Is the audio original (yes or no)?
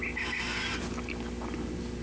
yes